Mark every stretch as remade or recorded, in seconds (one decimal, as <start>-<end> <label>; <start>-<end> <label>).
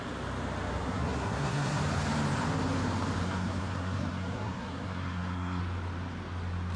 0.0-0.7 recorded; 0.7-1.8 remade; 1.8-3.2 recorded; 3.2-5.6 remade; 5.6-6.8 recorded